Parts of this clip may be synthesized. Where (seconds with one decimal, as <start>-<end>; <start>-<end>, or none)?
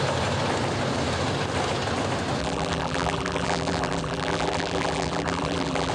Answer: 2.4-5.9